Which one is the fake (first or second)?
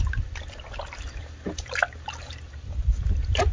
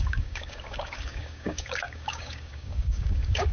second